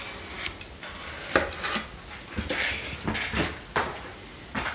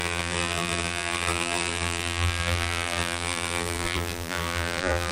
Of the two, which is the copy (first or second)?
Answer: second